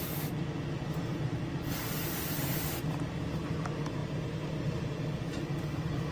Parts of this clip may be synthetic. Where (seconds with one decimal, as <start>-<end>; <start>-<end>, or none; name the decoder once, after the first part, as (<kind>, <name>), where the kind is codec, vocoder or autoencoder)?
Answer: 4.0-5.2 (vocoder, BigVGAN v2)